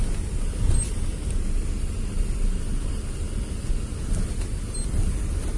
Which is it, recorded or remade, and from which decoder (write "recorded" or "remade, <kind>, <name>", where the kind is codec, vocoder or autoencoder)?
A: recorded